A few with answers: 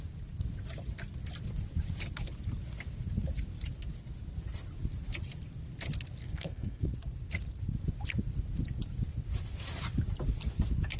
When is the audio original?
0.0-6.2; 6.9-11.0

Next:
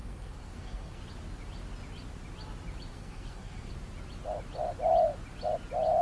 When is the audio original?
1.0-2.9; 3.7-6.0

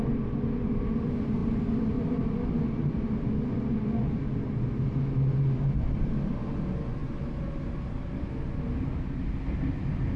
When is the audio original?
0.0-10.2

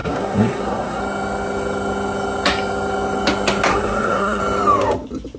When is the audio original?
1.0-3.7; 4.4-5.4

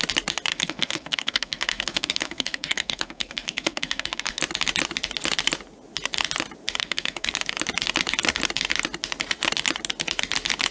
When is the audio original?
0.0-0.5; 4.4-6.8; 7.3-10.7

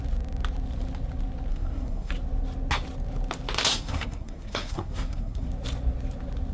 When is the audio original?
0.0-1.5; 2.1-3.7; 5.5-6.5

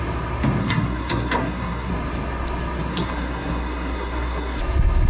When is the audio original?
0.0-0.6; 1.9-2.9; 4.6-5.1

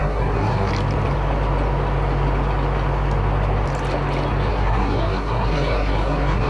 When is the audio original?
0.7-4.5